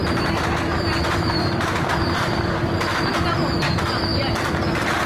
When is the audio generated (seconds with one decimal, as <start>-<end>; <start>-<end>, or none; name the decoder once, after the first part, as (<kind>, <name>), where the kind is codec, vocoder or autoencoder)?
0.0-3.1 (vocoder, BigVGAN v2)